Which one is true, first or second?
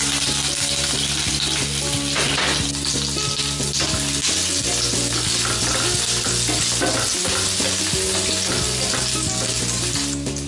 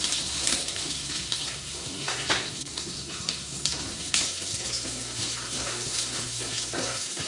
first